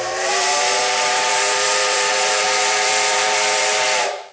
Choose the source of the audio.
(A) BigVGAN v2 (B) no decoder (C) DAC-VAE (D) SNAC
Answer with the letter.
A